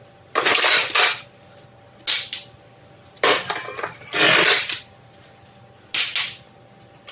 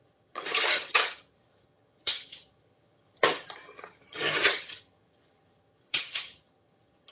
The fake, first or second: second